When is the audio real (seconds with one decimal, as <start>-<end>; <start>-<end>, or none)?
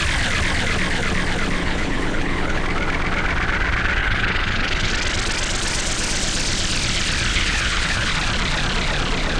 0.0-1.6; 2.6-4.0; 4.9-7.3; 8.1-9.4